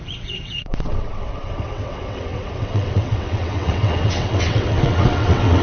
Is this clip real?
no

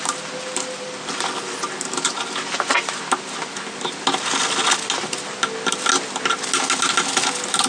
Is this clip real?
yes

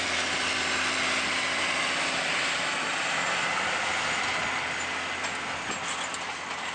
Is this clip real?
yes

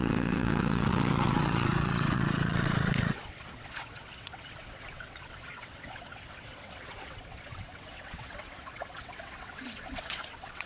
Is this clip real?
no